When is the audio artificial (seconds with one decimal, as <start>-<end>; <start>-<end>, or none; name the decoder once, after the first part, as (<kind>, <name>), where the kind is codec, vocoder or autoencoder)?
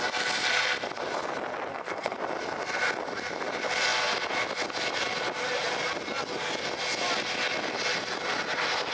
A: 1.7-2.2 (codec, SNAC)